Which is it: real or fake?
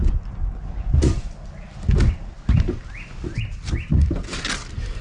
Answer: real